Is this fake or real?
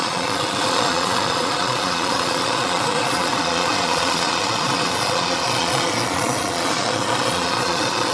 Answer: fake